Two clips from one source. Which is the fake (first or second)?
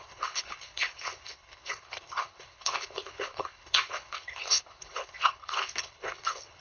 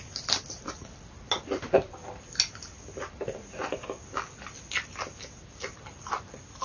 first